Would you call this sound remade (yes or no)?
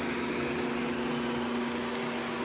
no